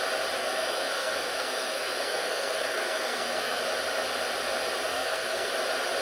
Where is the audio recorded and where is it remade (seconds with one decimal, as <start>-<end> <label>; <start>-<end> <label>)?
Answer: 0.0-0.4 recorded; 0.4-3.6 remade; 3.6-4.9 recorded; 4.9-5.5 remade; 5.5-6.0 recorded